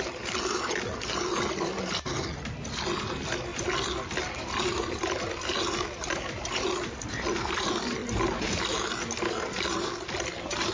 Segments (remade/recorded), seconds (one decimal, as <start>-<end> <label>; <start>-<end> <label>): 0.0-10.7 recorded